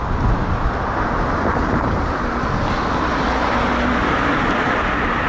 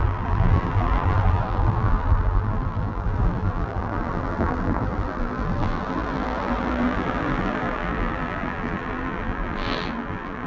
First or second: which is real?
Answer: first